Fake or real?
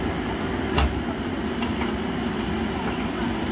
real